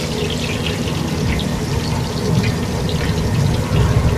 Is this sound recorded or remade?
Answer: recorded